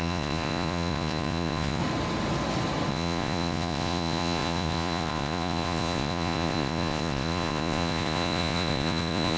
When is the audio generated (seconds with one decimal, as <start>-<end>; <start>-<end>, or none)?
0.0-1.8; 2.9-9.4